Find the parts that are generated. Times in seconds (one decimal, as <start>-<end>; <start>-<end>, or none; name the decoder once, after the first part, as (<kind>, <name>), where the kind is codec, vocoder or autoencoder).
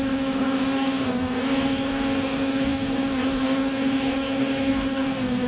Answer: 0.0-5.5 (codec, DAC)